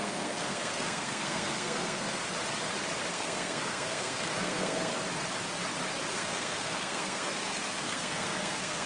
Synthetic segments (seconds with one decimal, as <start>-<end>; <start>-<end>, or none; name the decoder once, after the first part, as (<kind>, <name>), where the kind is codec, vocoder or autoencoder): 0.0-2.2 (codec, SNAC); 3.1-4.9; 6.1-8.9